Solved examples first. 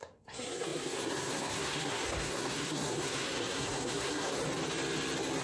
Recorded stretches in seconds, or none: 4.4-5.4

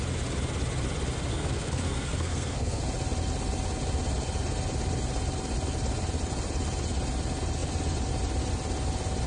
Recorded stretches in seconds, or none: 0.0-1.3; 2.8-9.3

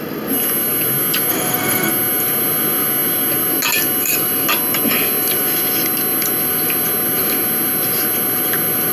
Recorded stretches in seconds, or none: 0.0-1.3; 1.9-8.9

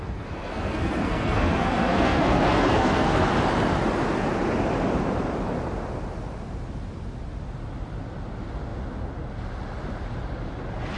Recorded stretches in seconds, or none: 3.3-11.0

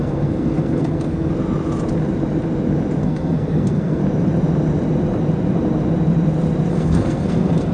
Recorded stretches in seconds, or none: 1.3-3.0; 4.0-6.7

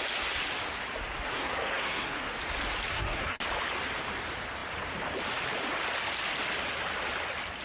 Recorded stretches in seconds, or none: 0.0-1.3; 2.3-2.9; 3.4-7.6

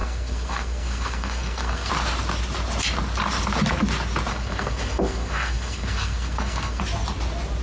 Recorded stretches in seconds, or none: 1.9-4.3; 6.8-7.6